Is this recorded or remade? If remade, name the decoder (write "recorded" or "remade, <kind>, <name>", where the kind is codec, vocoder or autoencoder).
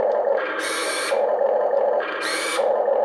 remade, vocoder, BigVGAN v2